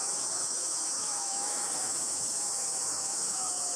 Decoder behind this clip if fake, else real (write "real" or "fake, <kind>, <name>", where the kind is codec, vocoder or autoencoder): fake, autoencoder, DAC-VAE